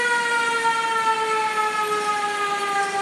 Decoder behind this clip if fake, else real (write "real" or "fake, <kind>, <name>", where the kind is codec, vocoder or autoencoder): real